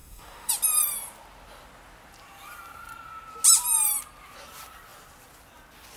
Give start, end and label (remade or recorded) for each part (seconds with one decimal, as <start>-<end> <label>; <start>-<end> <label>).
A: 0.0-0.5 remade; 0.5-6.0 recorded